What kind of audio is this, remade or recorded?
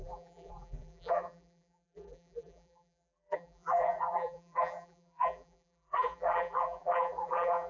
remade